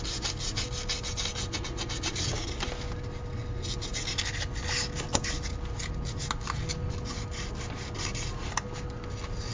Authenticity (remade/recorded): recorded